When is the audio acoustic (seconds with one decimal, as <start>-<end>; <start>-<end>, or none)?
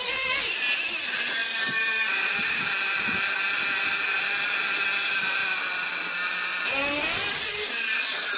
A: 0.0-1.4; 2.5-5.4; 6.1-8.4